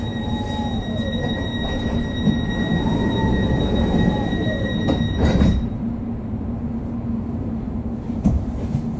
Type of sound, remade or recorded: remade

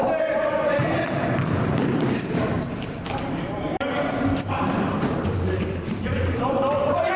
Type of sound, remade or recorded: remade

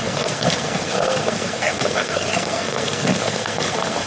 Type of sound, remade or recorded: remade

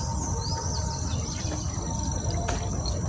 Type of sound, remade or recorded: recorded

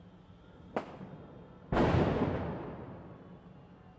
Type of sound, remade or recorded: recorded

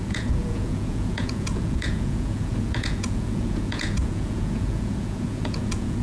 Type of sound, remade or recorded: remade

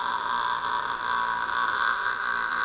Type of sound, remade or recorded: recorded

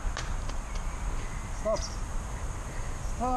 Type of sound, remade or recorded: recorded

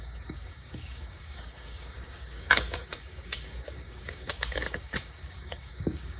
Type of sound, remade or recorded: remade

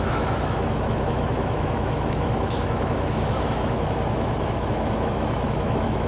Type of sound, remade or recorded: remade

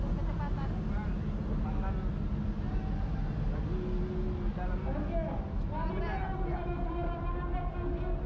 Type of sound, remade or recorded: recorded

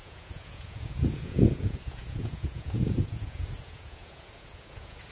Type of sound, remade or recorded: remade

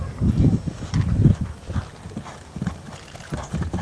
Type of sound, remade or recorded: recorded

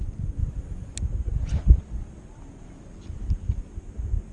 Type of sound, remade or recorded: recorded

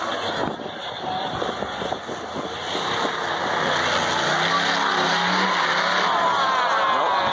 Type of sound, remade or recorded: recorded